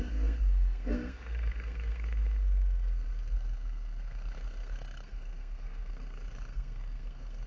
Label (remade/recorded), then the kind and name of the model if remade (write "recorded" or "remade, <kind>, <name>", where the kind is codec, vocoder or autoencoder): remade, codec, SNAC